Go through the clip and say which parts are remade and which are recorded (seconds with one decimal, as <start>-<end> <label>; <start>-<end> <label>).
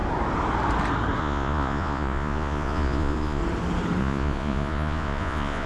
0.0-1.2 recorded; 1.2-3.4 remade; 3.4-4.0 recorded; 4.0-5.7 remade